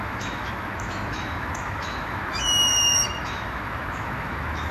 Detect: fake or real fake